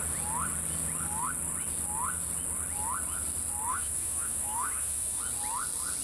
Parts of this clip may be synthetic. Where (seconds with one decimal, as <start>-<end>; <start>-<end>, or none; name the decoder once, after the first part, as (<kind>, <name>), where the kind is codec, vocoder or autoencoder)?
3.7-5.2 (autoencoder, DAC-VAE)